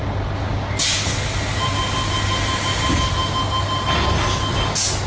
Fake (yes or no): no